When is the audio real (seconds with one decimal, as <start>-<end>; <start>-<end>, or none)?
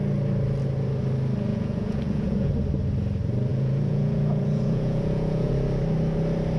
0.0-1.5; 2.5-3.5; 5.5-6.6